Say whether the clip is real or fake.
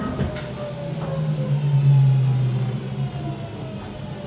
real